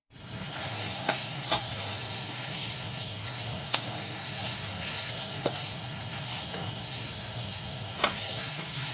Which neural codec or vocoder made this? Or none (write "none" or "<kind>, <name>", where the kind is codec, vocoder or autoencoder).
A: codec, SNAC